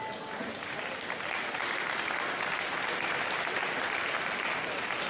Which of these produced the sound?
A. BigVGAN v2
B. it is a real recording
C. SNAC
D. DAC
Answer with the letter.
B